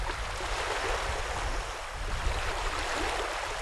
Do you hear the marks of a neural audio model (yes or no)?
no